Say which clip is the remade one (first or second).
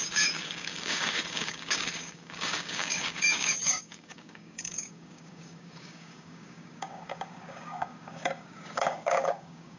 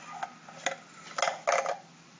first